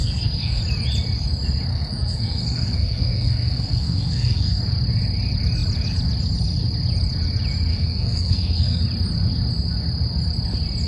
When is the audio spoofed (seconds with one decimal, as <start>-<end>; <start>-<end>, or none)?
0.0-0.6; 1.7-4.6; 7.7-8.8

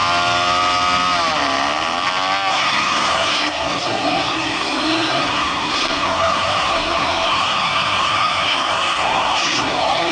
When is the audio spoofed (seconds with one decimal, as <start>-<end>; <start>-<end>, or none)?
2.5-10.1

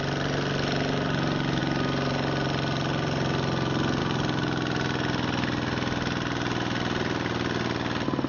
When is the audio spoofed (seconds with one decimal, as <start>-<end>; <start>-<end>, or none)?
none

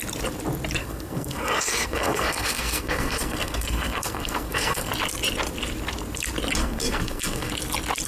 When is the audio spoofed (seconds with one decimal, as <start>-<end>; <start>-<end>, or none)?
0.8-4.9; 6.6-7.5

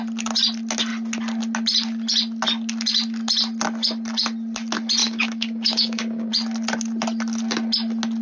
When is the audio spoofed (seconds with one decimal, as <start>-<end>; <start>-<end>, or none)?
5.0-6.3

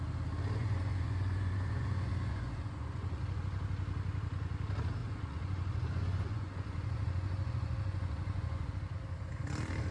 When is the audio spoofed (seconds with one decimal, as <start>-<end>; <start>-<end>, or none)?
0.6-3.4; 5.0-8.7

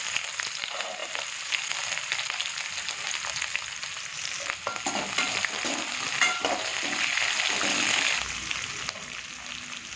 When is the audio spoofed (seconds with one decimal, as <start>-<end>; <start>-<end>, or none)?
none

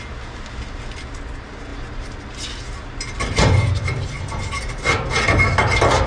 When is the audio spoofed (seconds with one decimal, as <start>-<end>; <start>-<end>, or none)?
none